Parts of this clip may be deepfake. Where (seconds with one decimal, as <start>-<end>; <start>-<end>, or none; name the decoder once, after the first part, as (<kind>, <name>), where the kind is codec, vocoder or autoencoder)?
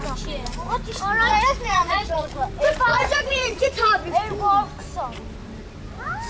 1.7-2.3 (vocoder, Vocos); 2.9-3.9